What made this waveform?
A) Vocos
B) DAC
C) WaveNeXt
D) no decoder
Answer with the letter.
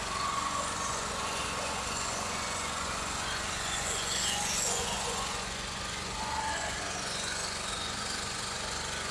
A